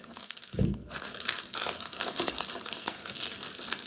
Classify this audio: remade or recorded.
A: remade